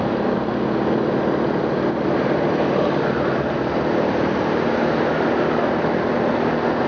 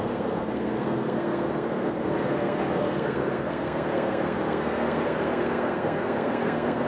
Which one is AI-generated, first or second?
second